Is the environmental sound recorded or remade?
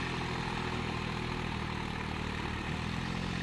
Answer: recorded